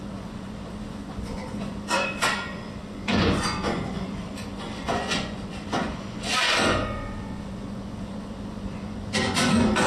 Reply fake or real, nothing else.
fake